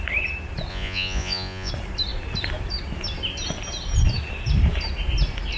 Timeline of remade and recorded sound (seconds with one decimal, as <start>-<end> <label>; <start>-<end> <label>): 0.0-0.7 recorded; 0.7-1.7 remade; 1.7-5.6 recorded